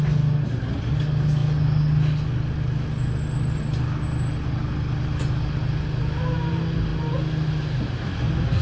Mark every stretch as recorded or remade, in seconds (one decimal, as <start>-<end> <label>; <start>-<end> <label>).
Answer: 0.0-8.6 recorded